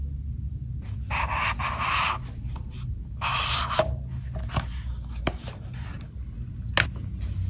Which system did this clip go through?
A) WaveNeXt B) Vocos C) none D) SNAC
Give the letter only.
C